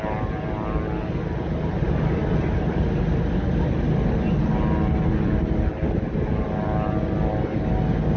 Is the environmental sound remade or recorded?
recorded